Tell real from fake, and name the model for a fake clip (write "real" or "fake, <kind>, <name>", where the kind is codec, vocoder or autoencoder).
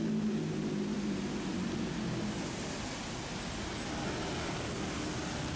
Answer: real